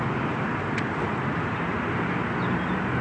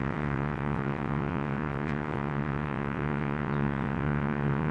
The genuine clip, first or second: first